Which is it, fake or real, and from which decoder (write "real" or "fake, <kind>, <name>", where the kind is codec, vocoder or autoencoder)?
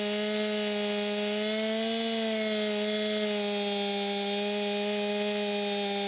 real